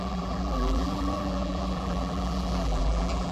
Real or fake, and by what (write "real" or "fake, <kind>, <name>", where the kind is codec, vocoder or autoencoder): fake, vocoder, BigVGAN v2